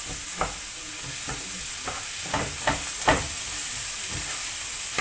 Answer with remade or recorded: recorded